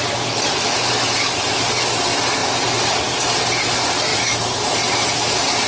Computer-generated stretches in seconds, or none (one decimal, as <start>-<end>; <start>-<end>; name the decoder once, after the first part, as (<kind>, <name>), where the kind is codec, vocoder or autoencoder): 4.1-5.7 (vocoder, BigVGAN v2)